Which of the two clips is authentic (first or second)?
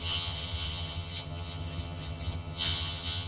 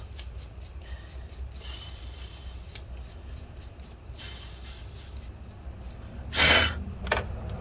second